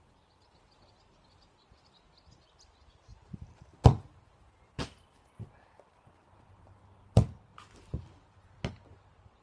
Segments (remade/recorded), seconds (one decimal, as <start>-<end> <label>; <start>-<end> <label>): 0.0-3.1 recorded; 3.1-3.7 remade; 3.7-7.5 recorded; 7.5-8.5 remade; 8.5-9.4 recorded